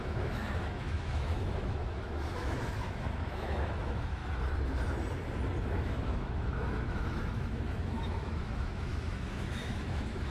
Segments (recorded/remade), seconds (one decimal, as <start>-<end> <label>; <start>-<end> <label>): 0.0-4.2 remade; 4.2-5.6 recorded; 5.6-10.3 remade